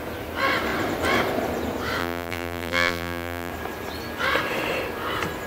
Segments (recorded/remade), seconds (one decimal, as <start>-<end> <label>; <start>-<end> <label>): 0.0-2.0 recorded; 2.0-3.5 remade; 3.5-5.5 recorded